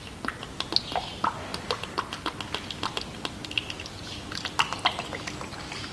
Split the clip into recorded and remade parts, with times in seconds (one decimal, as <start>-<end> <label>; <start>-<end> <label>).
0.0-1.5 recorded; 1.5-4.8 remade; 4.8-5.9 recorded